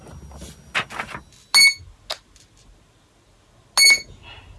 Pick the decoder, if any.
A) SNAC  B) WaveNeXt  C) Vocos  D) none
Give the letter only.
D